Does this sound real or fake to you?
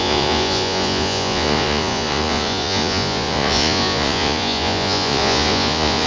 fake